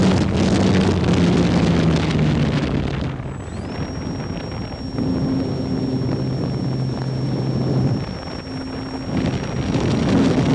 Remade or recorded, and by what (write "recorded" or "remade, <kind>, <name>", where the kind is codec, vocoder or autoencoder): recorded